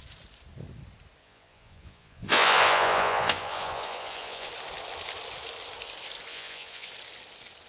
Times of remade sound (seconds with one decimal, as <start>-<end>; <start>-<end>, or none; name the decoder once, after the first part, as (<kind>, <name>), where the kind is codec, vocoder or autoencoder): 1.2-4.5 (vocoder, Vocos); 6.3-6.9

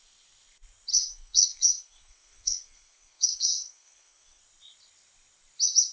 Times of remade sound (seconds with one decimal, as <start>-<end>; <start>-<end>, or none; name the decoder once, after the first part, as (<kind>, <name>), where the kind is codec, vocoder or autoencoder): 0.9-4.4 (codec, SNAC)

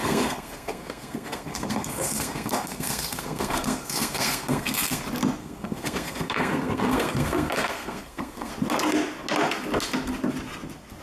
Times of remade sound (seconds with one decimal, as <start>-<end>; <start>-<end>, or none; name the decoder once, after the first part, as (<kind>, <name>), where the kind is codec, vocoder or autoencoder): 0.0-5.0 (codec, SNAC); 5.4-8.5

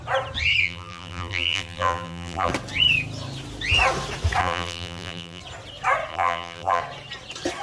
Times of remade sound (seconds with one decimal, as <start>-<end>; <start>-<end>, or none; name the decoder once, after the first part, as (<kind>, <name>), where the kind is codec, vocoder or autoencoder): 0.6-2.5 (vocoder, BigVGAN v2); 4.4-5.4; 6.1-6.8